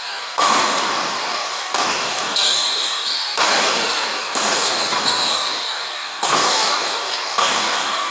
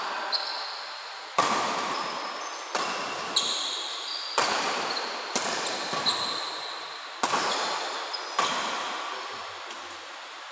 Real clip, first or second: second